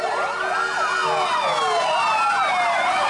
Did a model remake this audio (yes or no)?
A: no